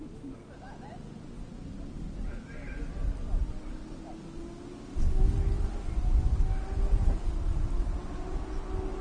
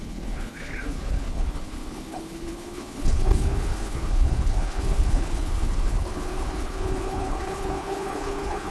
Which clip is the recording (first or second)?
first